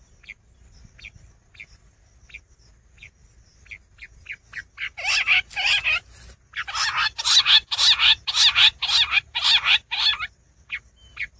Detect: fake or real real